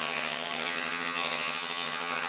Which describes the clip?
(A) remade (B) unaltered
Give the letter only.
A